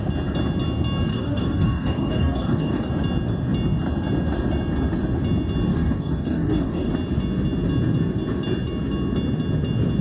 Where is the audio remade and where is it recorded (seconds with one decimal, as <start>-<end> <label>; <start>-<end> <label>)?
0.0-1.1 recorded; 1.1-2.9 remade; 2.9-5.7 recorded; 5.7-6.9 remade; 6.9-10.0 recorded